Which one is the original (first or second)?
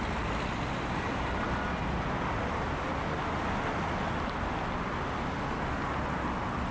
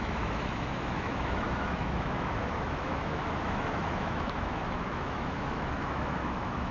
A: first